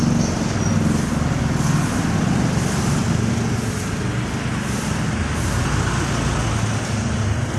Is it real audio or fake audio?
real